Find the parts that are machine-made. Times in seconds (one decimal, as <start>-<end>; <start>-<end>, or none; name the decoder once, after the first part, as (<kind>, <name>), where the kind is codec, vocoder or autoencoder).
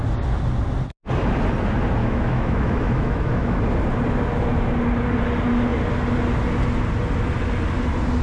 2.0-3.6 (autoencoder, DAC-VAE)